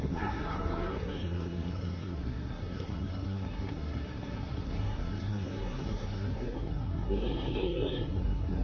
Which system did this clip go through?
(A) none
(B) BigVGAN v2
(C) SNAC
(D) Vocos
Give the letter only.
C